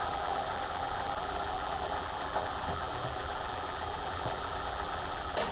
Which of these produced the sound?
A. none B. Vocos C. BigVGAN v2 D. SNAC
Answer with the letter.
C